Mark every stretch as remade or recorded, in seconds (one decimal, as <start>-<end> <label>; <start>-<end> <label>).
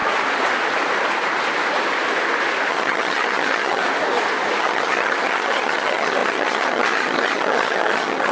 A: 0.0-2.7 recorded; 2.7-3.8 remade; 3.8-4.6 recorded; 4.6-8.3 remade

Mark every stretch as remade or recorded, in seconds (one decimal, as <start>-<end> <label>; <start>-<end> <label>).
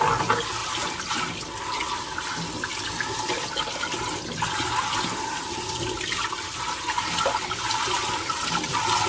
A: 0.0-9.1 recorded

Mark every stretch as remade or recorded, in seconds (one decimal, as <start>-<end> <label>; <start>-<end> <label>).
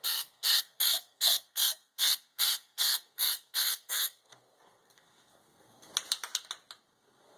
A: 0.0-5.9 remade; 5.9-6.8 recorded; 6.8-7.4 remade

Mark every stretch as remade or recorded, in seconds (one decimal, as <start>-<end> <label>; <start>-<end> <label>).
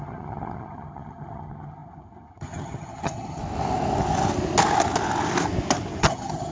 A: 0.0-3.4 remade; 3.4-6.0 recorded; 6.0-6.5 remade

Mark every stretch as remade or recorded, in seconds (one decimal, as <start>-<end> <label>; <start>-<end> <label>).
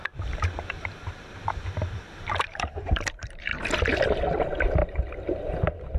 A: 0.0-3.5 remade; 3.5-4.0 recorded; 4.0-6.0 remade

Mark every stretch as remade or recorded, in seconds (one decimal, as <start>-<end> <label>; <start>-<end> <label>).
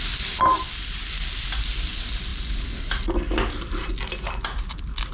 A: 0.0-5.1 recorded